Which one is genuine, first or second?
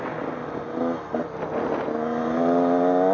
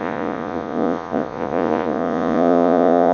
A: first